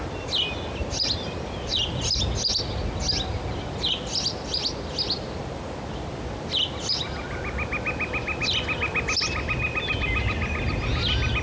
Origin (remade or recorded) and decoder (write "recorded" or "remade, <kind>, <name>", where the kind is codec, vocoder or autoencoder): recorded